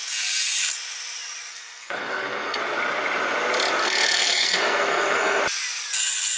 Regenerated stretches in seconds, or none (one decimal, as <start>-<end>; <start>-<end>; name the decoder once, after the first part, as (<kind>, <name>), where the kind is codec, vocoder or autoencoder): 1.5-2.6 (codec, SNAC); 3.8-5.4